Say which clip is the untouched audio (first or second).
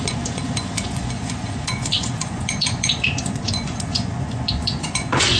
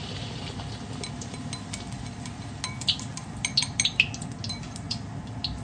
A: second